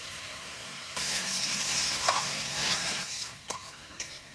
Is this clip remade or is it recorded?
remade